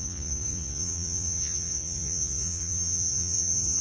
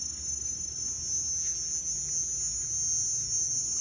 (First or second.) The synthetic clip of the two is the first